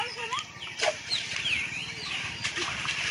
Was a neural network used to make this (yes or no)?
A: yes